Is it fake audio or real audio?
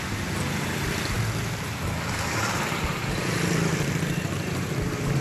fake